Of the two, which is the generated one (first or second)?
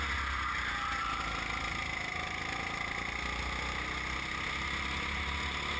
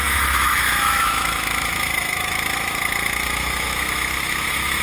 second